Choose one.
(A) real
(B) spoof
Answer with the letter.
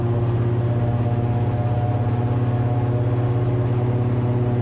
A